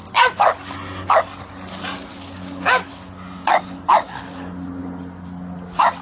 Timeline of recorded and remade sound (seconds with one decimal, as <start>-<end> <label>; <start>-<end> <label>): 0.0-6.0 recorded